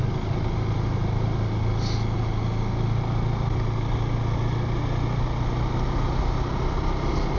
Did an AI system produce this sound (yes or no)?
no